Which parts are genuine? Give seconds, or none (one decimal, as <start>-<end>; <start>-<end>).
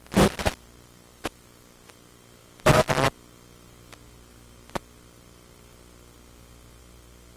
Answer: 0.0-7.4